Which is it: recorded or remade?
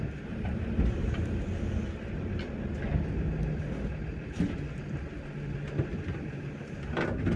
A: recorded